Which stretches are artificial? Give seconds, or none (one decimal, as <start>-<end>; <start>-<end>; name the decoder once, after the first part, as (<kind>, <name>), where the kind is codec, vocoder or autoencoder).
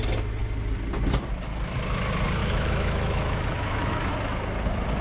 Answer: 2.4-4.1 (autoencoder, DAC-VAE)